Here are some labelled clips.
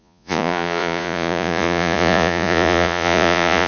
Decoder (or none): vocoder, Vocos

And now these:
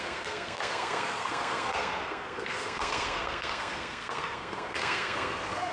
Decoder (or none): codec, SNAC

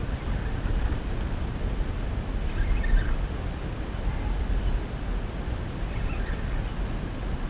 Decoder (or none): none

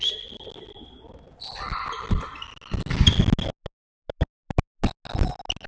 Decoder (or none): none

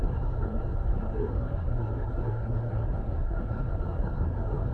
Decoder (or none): codec, SNAC